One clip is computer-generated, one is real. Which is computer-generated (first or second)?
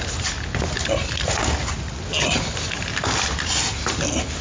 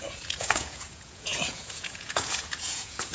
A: second